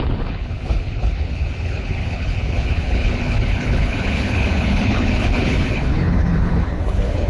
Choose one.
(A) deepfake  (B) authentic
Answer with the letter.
A